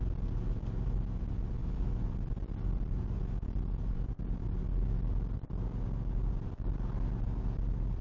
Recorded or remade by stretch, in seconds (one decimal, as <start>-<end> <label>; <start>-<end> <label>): 0.0-8.0 recorded